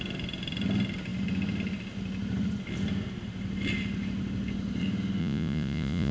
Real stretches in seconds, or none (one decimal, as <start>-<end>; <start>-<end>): 0.0-5.2